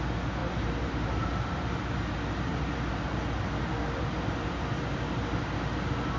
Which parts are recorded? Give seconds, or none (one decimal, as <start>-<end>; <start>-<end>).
0.0-0.4; 1.8-2.5; 3.1-6.2